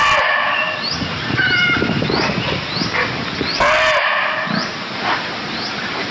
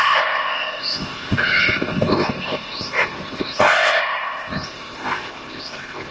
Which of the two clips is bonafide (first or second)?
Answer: first